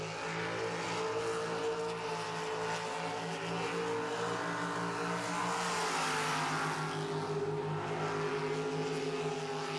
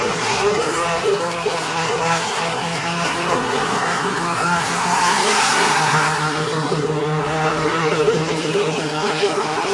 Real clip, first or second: first